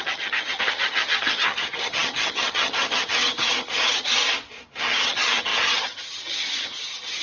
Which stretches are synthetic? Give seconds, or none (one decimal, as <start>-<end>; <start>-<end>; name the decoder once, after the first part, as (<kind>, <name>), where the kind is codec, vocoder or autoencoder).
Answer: 0.0-4.2 (vocoder, HiFi-GAN); 4.8-7.2